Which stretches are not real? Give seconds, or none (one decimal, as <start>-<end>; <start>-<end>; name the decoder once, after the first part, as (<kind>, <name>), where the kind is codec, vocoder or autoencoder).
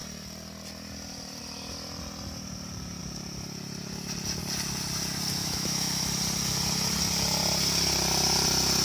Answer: 5.4-6.0 (autoencoder, DAC-VAE)